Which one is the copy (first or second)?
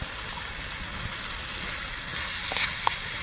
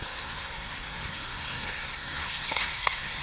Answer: second